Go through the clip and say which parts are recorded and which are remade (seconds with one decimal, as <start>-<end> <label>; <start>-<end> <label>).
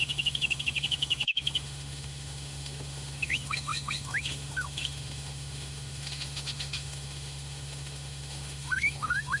0.0-9.4 remade